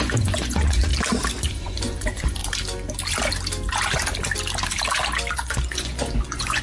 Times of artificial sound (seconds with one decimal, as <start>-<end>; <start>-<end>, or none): 0.0-0.9; 1.5-2.4; 5.3-6.6